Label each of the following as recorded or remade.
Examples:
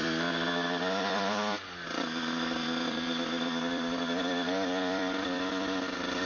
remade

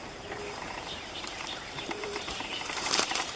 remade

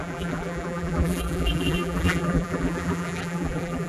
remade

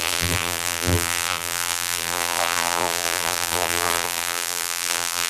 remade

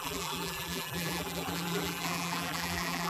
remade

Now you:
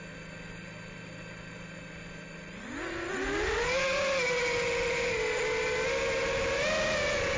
recorded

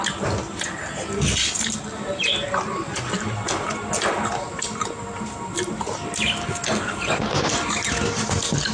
remade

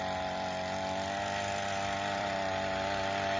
remade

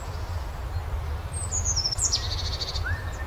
recorded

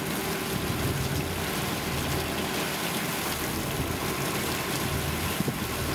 recorded